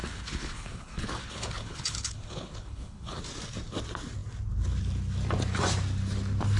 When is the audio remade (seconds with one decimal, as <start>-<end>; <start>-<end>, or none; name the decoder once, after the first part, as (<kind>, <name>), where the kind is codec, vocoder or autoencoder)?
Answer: 0.0-3.2 (codec, HILCodec)